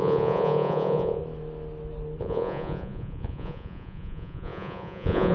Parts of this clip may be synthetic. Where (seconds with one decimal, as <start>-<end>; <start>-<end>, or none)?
0.0-1.2; 2.2-5.3